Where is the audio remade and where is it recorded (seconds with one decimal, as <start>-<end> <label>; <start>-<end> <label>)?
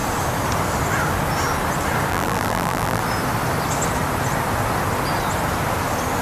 0.0-2.1 recorded; 2.1-3.0 remade; 3.0-6.2 recorded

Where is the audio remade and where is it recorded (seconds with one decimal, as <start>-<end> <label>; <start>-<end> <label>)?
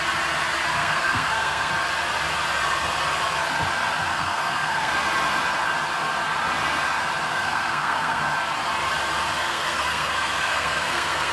0.0-0.8 recorded; 0.8-1.7 remade; 1.7-4.1 recorded; 4.1-4.9 remade; 4.9-7.3 recorded; 7.3-8.2 remade; 8.2-9.4 recorded; 9.4-11.3 remade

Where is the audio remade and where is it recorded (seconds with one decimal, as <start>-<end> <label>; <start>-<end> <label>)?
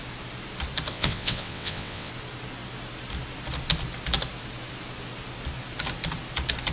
0.0-0.9 recorded; 0.9-2.1 remade; 2.1-6.7 recorded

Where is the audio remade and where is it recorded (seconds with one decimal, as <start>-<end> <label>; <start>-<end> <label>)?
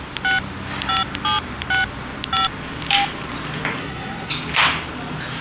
0.0-3.8 recorded; 3.8-4.3 remade; 4.3-5.4 recorded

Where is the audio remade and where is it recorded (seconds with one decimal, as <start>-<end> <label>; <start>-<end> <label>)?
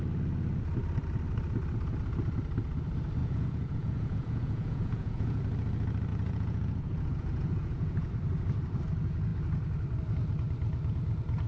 0.0-3.2 recorded; 3.2-5.4 remade; 5.4-6.1 recorded; 6.1-8.1 remade; 8.1-11.5 recorded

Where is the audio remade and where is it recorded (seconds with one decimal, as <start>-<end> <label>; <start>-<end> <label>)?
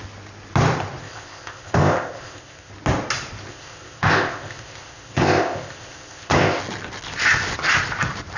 0.0-1.0 recorded; 1.0-2.7 remade; 2.7-3.5 recorded; 3.5-6.6 remade; 6.6-8.4 recorded